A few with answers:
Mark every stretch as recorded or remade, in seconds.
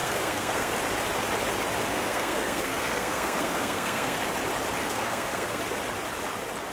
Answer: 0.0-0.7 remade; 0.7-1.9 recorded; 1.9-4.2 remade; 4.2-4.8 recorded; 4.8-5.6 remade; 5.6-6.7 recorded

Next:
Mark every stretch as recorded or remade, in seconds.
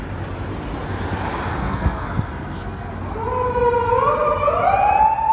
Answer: 0.0-1.6 recorded; 1.6-2.9 remade; 2.9-5.3 recorded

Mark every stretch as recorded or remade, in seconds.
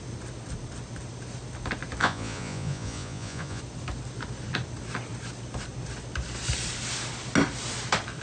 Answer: 0.0-2.0 recorded; 2.0-3.6 remade; 3.6-8.2 recorded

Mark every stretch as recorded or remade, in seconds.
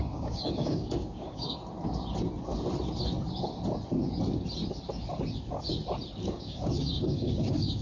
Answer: 0.0-1.6 remade; 1.6-6.3 recorded; 6.3-7.8 remade